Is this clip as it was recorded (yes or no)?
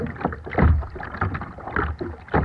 yes